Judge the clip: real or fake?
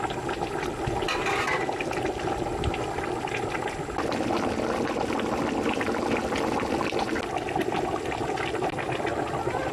real